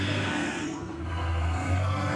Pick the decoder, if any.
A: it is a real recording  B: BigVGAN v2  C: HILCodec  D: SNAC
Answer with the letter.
D